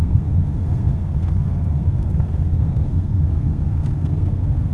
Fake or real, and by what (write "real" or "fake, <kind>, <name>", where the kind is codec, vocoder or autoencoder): fake, codec, SNAC